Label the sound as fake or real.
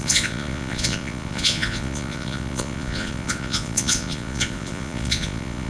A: fake